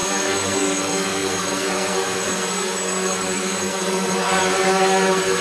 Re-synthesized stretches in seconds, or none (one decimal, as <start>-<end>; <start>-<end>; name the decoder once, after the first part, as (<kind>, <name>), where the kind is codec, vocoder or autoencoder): 0.0-5.4 (codec, SNAC)